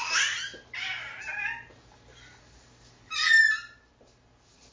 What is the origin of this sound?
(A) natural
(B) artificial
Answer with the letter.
A